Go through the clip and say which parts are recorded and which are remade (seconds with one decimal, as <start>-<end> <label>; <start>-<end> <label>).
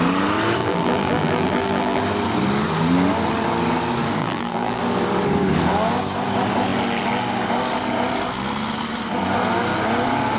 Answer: 0.0-0.6 recorded; 0.6-2.0 remade; 2.0-4.2 recorded; 4.2-4.8 remade; 4.8-10.4 recorded